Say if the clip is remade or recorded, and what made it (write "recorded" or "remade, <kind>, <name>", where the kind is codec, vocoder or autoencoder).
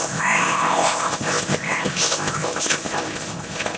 remade, codec, ZipCodec